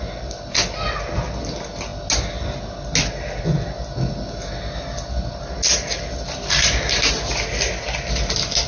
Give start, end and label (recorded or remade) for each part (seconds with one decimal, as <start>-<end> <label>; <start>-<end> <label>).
0.0-8.7 recorded

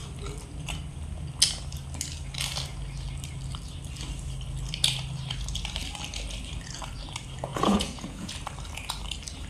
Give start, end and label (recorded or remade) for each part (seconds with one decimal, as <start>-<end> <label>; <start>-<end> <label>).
0.0-7.5 recorded; 7.5-8.3 remade; 8.3-9.5 recorded

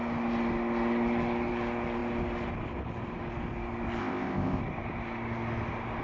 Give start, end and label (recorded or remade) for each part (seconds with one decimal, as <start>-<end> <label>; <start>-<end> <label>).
0.0-4.0 recorded; 4.0-4.6 remade; 4.6-6.0 recorded

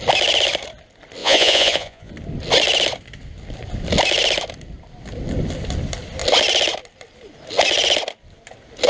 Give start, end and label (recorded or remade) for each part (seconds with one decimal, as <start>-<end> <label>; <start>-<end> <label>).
0.0-1.2 recorded; 1.2-2.1 remade; 2.1-8.9 recorded

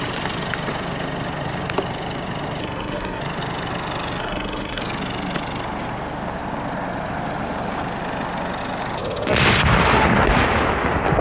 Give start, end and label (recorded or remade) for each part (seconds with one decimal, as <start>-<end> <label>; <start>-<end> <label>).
0.0-2.6 recorded; 2.6-3.2 remade; 3.2-4.2 recorded; 4.2-4.8 remade; 4.8-11.2 recorded

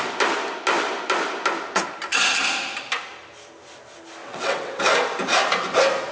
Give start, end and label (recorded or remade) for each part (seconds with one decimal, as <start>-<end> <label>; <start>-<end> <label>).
0.0-4.2 recorded; 4.2-4.8 remade; 4.8-6.1 recorded

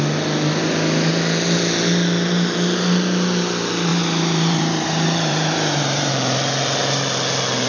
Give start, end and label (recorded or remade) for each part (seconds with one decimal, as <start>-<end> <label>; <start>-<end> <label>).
0.0-3.9 recorded; 3.9-6.1 remade; 6.1-7.7 recorded